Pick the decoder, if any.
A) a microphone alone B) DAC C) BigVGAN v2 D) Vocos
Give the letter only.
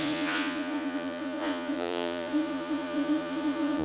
D